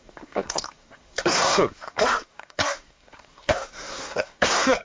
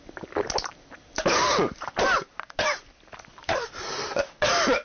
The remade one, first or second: first